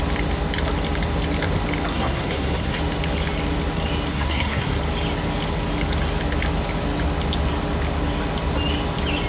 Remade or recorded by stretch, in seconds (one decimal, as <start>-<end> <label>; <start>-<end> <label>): 0.0-1.9 recorded; 1.9-2.8 remade; 2.8-4.1 recorded; 4.1-4.8 remade; 4.8-9.3 recorded